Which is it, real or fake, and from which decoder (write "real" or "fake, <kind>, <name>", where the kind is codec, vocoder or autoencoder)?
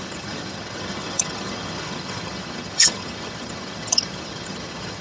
fake, vocoder, HiFi-GAN